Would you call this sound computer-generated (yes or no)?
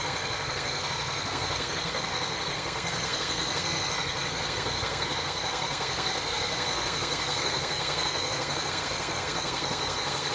yes